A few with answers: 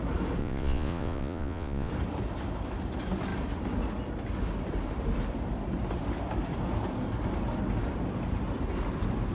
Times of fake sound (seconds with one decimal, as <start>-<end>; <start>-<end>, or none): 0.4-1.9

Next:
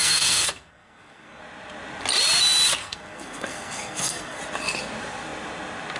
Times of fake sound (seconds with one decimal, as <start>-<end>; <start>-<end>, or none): 0.0-1.4; 2.8-4.4

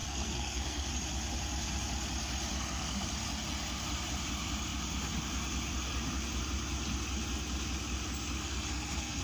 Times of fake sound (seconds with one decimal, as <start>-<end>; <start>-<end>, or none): 0.0-0.9; 2.5-3.1; 8.4-9.2